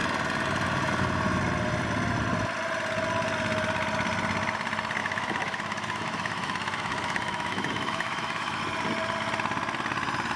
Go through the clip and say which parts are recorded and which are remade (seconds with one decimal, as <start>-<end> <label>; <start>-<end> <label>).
0.0-5.0 recorded; 5.0-8.6 remade; 8.6-10.4 recorded